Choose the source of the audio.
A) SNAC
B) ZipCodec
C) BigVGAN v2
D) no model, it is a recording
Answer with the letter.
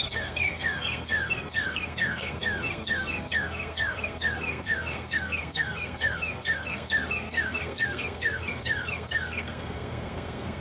A